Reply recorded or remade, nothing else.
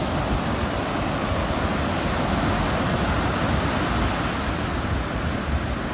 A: recorded